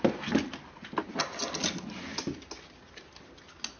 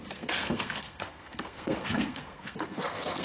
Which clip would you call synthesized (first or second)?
second